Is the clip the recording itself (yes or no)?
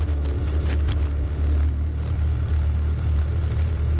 yes